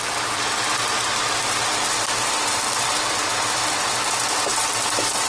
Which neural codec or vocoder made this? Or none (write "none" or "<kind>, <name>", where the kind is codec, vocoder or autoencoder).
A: vocoder, BigVGAN v2